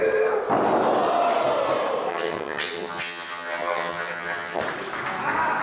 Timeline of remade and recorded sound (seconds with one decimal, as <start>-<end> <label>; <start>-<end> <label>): 0.0-2.1 recorded; 2.1-4.6 remade; 4.6-5.6 recorded